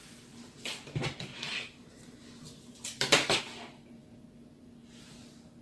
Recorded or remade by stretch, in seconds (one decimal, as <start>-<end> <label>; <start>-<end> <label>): 0.0-3.4 remade; 3.4-5.6 recorded